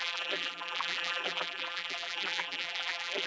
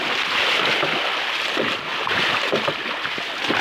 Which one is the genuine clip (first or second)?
second